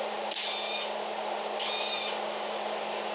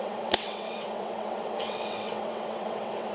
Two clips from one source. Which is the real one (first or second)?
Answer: first